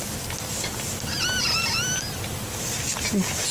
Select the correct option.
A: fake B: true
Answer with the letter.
B